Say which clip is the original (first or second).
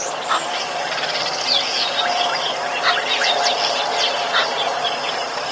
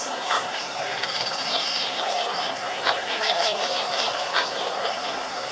first